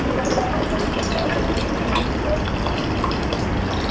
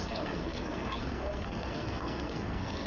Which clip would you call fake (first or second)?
second